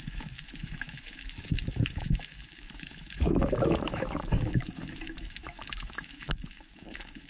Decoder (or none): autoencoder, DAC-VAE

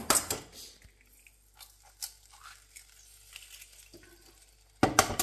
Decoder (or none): none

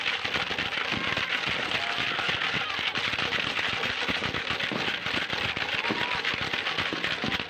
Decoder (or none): none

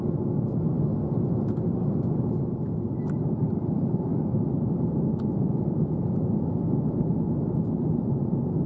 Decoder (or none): none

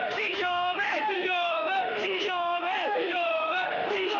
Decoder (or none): autoencoder, DAC-VAE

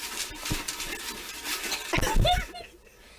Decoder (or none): none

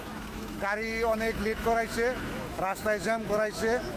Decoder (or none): autoencoder, DAC-VAE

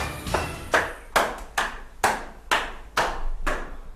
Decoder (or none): none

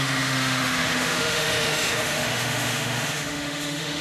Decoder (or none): autoencoder, DAC-VAE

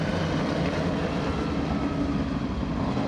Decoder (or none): none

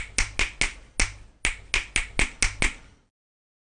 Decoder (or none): none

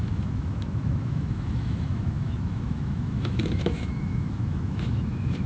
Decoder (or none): autoencoder, DAC-VAE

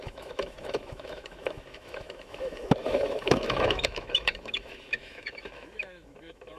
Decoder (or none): autoencoder, DAC-VAE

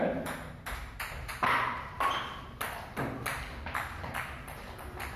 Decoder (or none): none